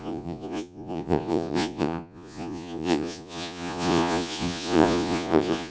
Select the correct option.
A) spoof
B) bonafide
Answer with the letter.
A